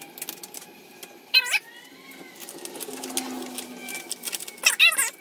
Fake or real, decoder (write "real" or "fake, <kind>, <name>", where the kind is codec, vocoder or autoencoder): real